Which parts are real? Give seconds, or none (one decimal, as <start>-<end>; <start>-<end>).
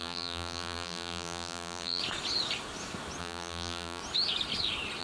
2.0-3.2; 4.0-5.0